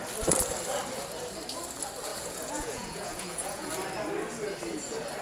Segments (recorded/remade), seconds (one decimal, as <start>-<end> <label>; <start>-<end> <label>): 0.0-2.1 recorded; 2.1-3.7 remade; 3.7-5.2 recorded